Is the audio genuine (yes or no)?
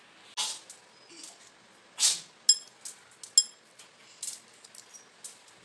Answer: yes